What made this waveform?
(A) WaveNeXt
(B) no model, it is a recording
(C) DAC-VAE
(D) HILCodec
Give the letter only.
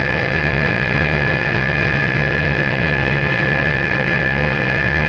A